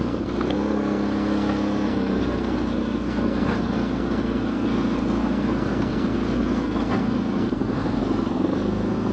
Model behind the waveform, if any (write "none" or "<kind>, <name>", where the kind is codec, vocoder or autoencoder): codec, SNAC